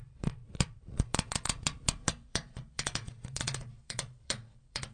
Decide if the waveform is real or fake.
fake